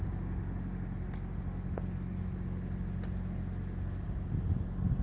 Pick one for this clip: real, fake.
real